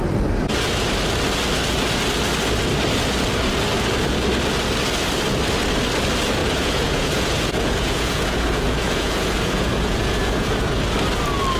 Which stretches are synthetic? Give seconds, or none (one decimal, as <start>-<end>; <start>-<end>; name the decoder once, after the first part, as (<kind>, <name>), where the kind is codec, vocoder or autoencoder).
6.4-10.8 (vocoder, Vocos)